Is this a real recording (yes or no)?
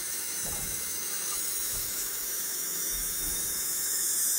no